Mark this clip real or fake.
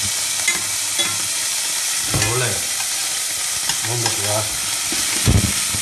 real